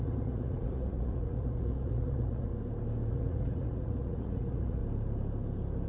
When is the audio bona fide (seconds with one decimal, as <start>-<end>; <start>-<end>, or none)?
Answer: 2.5-3.1; 4.8-5.9